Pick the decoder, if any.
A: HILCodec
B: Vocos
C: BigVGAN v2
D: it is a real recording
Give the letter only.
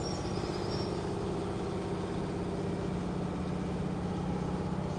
D